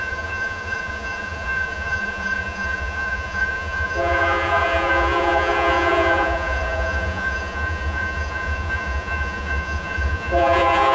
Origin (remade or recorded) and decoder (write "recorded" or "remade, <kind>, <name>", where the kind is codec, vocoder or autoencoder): remade, vocoder, Vocos